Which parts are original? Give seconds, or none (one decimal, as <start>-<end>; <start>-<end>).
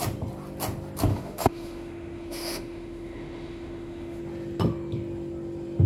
0.0-1.1; 4.2-5.9